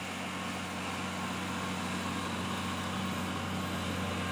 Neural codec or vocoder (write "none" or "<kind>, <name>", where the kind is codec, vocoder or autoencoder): none